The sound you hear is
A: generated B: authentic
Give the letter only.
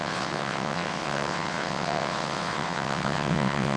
A